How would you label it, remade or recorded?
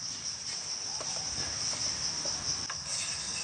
recorded